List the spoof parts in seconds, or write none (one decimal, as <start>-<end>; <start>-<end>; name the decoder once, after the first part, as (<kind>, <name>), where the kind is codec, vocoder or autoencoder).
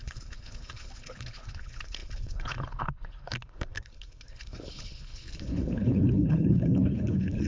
0.0-7.5 (codec, HILCodec)